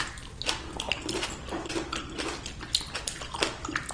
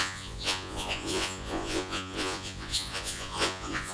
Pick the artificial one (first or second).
second